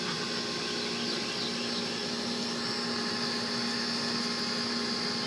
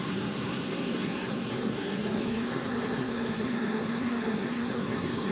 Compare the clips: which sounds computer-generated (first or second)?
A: second